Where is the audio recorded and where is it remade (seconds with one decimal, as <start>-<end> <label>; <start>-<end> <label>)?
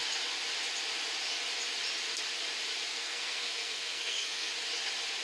0.0-2.9 recorded; 2.9-4.5 remade; 4.5-5.2 recorded